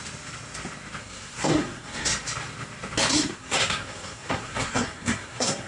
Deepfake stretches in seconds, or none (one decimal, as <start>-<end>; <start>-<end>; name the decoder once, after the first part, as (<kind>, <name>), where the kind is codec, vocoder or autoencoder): 1.0-2.1 (codec, SNAC); 3.1-5.7